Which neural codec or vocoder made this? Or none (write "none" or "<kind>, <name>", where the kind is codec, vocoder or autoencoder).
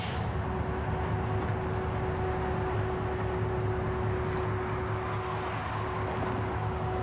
none